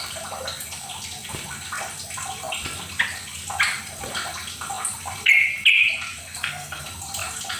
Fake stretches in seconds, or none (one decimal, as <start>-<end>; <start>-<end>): 6.2-6.8